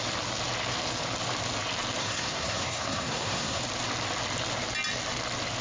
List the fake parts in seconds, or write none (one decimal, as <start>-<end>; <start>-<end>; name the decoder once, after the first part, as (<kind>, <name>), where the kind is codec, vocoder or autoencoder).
2.0-3.6 (codec, SNAC)